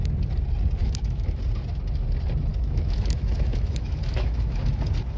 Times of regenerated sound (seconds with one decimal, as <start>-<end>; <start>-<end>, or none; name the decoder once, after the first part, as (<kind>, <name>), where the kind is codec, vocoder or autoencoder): 0.8-1.4 (autoencoder, DAC-VAE); 2.5-4.8